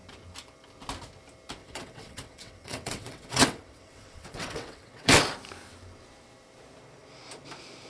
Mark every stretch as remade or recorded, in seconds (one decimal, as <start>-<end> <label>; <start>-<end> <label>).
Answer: 0.0-1.6 recorded; 1.6-5.2 remade; 5.2-7.9 recorded

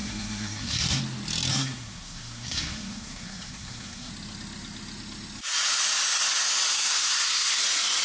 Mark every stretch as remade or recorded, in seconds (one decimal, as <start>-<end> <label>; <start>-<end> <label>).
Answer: 0.0-1.0 remade; 1.0-1.5 recorded; 1.5-4.1 remade; 4.1-6.7 recorded; 6.7-7.6 remade; 7.6-8.0 recorded

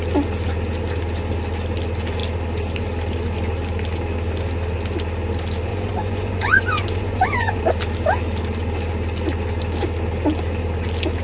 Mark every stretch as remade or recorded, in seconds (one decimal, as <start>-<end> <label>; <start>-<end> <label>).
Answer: 0.0-5.7 recorded; 5.7-7.6 remade; 7.6-11.2 recorded

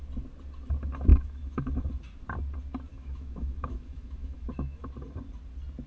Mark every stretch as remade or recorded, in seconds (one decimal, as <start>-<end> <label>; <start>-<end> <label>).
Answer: 0.0-1.1 recorded; 1.1-1.9 remade; 1.9-2.9 recorded; 2.9-4.8 remade; 4.8-5.9 recorded

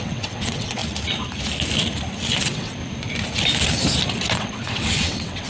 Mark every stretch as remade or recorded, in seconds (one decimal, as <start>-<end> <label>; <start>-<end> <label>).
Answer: 0.0-0.8 remade; 0.8-2.4 recorded; 2.4-2.8 remade; 2.8-4.3 recorded; 4.3-5.5 remade

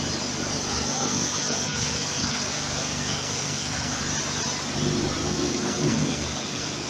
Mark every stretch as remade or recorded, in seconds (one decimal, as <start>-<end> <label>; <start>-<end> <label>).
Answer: 0.0-0.7 recorded; 0.7-4.0 remade; 4.0-5.2 recorded; 5.2-6.9 remade

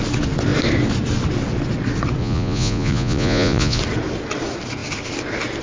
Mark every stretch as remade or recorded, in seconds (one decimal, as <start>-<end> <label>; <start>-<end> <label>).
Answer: 0.0-2.2 recorded; 2.2-3.8 remade; 3.8-5.6 recorded

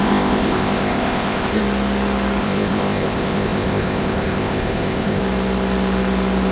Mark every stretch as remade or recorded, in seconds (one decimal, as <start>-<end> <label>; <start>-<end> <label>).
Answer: 0.0-1.6 remade; 1.6-2.4 recorded; 2.4-5.2 remade; 5.2-6.5 recorded